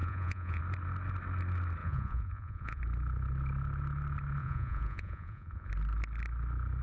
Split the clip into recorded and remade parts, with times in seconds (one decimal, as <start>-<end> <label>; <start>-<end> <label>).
0.0-0.6 remade; 0.6-1.8 recorded; 1.8-2.8 remade; 2.8-4.4 recorded; 4.4-5.7 remade; 5.7-6.8 recorded